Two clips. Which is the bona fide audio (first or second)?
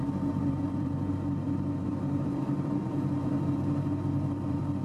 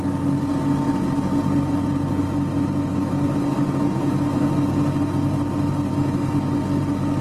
second